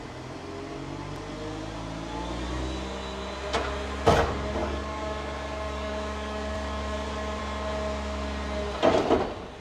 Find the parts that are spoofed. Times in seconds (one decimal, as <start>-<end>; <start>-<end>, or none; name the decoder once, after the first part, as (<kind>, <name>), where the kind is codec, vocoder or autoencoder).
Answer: 4.6-7.4 (codec, DAC)